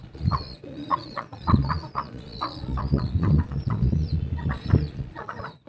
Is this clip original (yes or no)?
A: no